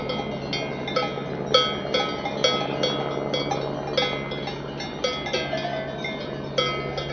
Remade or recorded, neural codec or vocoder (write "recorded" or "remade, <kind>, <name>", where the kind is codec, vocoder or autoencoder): recorded